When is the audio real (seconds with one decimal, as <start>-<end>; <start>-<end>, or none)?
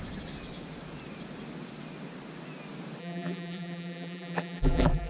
0.0-3.0